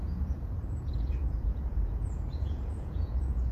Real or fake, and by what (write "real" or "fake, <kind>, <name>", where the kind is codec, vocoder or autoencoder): fake, vocoder, Vocos